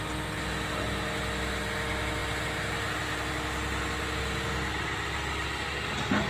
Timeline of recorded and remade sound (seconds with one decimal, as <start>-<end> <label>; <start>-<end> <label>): 0.0-6.3 recorded